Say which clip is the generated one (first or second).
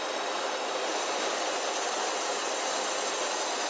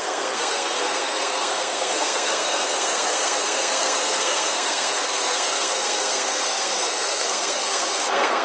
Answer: second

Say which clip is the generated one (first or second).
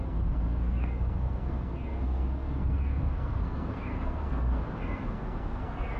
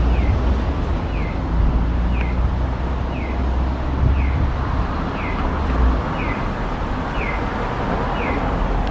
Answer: first